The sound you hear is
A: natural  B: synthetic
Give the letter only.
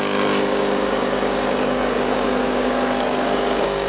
B